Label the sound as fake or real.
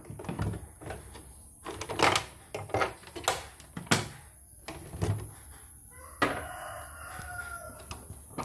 real